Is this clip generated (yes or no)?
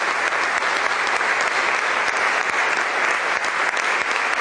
no